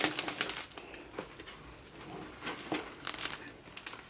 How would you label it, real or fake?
real